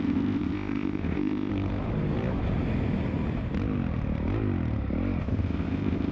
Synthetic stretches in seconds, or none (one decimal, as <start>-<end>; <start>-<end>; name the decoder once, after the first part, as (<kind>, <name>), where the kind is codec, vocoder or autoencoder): 0.0-1.5 (codec, ZipCodec); 5.2-6.1